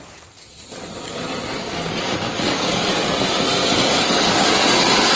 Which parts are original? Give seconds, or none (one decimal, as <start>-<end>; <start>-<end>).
0.0-1.6; 2.9-3.6; 4.5-5.2